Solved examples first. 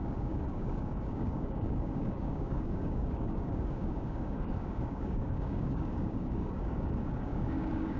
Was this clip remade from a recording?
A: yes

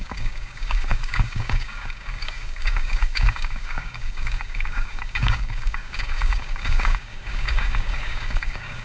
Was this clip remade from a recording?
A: yes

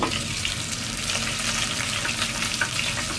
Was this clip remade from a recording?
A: no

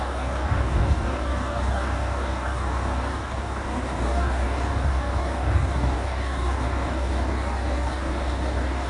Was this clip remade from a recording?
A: yes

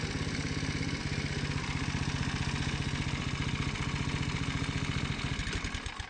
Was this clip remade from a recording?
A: no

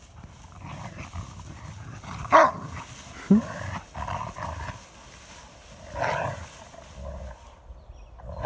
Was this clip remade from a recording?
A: no